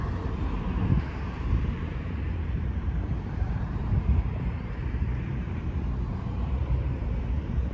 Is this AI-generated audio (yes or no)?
yes